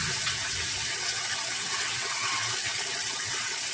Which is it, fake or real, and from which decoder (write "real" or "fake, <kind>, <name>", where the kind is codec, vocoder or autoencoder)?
fake, vocoder, WaveNeXt